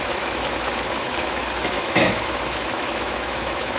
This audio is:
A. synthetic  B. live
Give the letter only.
A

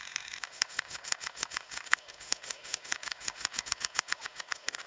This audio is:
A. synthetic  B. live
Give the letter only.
A